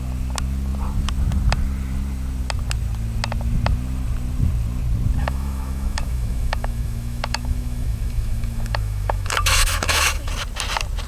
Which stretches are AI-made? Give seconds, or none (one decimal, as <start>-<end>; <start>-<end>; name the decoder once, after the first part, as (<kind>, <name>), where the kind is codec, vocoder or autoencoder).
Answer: 5.2-10.3 (autoencoder, DAC-VAE)